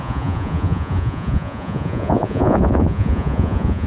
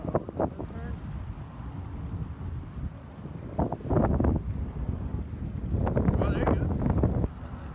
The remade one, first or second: first